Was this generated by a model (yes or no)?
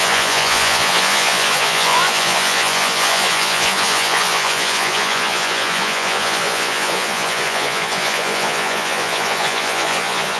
yes